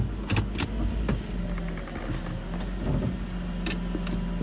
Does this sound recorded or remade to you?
recorded